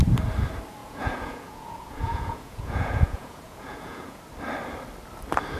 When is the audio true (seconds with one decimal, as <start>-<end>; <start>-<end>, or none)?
0.0-0.8; 4.2-5.6